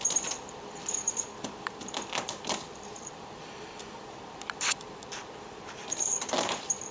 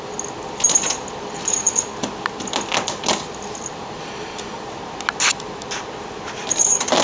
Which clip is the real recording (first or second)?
second